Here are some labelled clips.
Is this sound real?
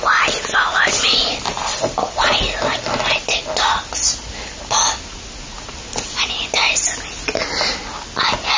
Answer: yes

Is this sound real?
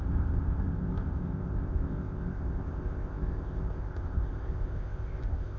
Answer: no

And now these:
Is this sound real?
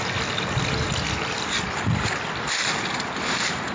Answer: yes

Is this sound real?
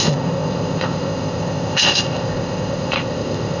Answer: no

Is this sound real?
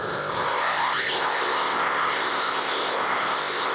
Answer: no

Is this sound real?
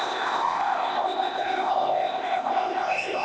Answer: no